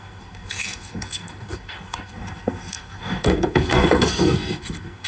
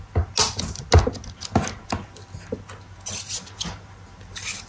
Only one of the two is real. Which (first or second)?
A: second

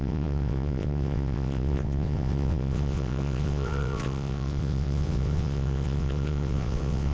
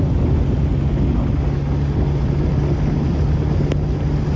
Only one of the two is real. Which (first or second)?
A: second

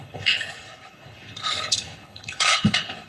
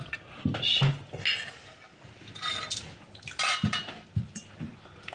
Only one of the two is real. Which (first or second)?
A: second